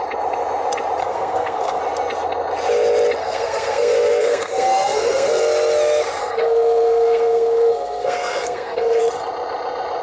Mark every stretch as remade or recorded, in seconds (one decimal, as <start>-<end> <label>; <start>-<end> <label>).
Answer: 0.0-1.0 recorded; 1.0-1.8 remade; 1.8-3.2 recorded; 3.2-5.4 remade; 5.4-6.2 recorded; 6.2-9.0 remade; 9.0-10.0 recorded